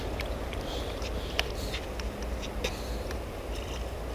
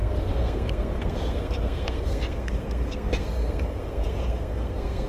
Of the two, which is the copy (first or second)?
second